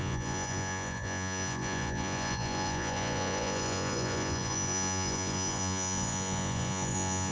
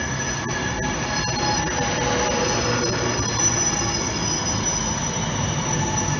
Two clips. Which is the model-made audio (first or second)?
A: first